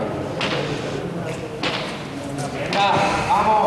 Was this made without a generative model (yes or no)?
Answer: yes